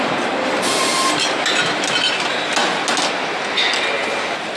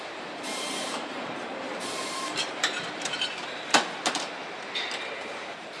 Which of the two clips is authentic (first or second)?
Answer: first